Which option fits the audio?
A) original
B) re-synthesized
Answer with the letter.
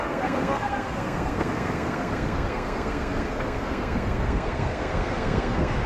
B